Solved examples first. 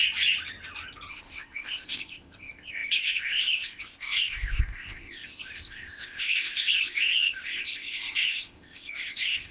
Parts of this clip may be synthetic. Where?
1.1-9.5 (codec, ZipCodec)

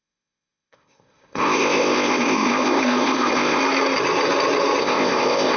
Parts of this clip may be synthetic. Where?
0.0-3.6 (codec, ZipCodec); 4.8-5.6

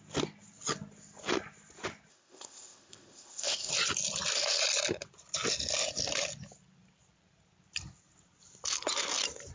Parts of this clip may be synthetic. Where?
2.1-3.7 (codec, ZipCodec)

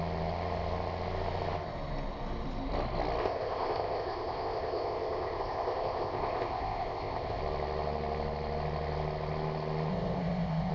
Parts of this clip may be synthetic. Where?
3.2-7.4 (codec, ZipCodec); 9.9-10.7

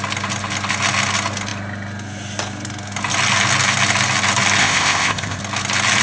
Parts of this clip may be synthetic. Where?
4.6-5.4 (codec, ZipCodec)